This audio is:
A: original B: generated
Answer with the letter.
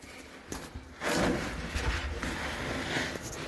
A